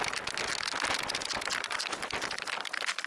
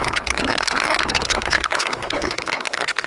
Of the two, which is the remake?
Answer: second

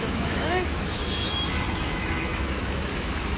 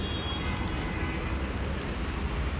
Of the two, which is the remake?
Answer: first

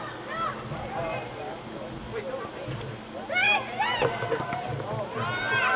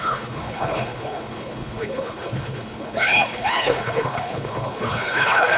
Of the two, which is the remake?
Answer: second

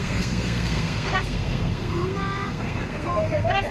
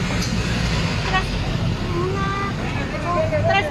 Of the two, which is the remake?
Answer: first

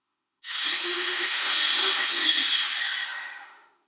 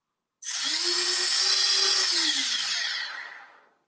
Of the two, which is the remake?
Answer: first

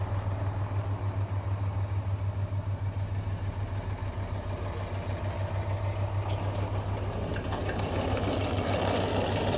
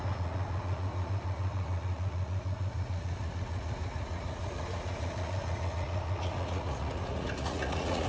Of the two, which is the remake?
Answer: second